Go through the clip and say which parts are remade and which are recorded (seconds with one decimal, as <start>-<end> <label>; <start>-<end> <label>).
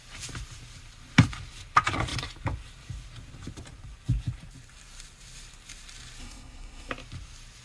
0.0-6.2 recorded; 6.2-6.9 remade; 6.9-7.6 recorded